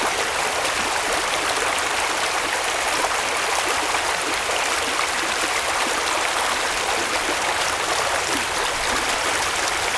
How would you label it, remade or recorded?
recorded